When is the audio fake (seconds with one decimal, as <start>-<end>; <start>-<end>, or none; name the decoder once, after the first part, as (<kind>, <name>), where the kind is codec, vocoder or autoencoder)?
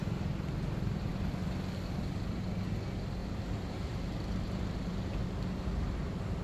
3.2-5.2 (vocoder, BigVGAN v2)